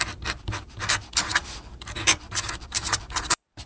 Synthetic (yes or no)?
yes